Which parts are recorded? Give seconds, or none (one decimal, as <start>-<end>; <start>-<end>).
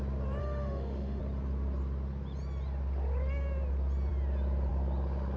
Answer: 0.0-0.4; 1.2-5.4